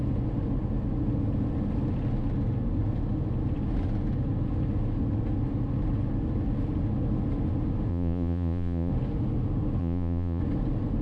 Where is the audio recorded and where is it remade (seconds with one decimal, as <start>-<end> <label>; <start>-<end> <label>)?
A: 0.0-7.9 recorded; 7.9-8.9 remade; 8.9-9.8 recorded; 9.8-10.4 remade; 10.4-11.0 recorded